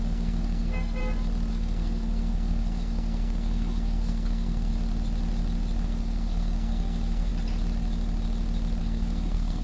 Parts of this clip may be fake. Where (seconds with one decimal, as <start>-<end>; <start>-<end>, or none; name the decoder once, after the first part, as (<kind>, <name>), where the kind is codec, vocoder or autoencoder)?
0.0-1.0 (codec, SNAC); 1.5-4.7; 5.8-7.3; 8.8-9.6

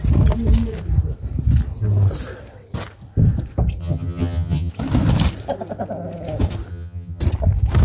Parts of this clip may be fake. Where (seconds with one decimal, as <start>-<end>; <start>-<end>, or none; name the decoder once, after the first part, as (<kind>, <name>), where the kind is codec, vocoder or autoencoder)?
3.8-4.7 (vocoder, HiFi-GAN); 6.7-7.2

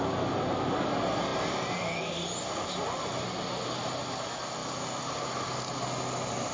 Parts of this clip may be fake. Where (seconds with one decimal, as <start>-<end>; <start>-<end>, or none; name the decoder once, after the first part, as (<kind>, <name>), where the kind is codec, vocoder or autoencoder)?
none